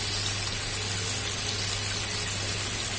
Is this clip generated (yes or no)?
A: no